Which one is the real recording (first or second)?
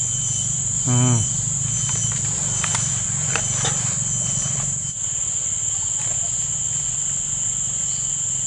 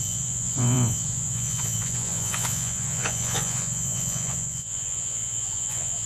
first